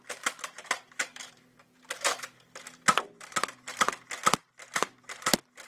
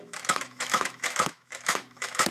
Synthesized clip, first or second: second